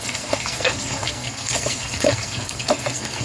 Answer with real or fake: fake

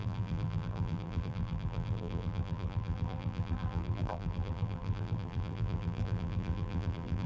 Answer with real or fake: fake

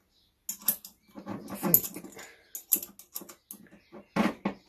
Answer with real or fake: real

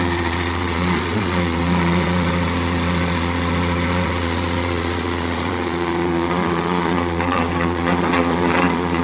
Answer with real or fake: fake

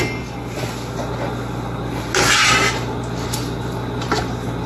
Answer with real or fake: real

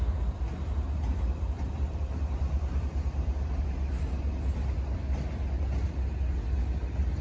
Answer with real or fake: real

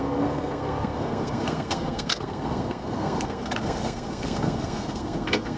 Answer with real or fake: fake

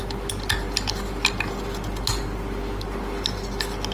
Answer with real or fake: real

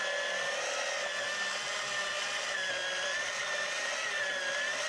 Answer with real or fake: real